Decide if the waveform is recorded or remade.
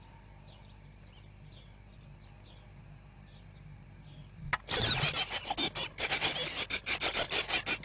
recorded